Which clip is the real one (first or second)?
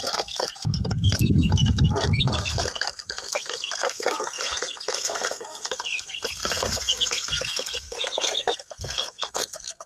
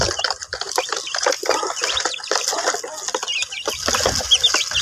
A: second